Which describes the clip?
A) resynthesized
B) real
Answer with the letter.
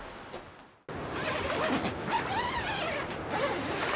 B